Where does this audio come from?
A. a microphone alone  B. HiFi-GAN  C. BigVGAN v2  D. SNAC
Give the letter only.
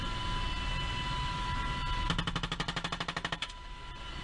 A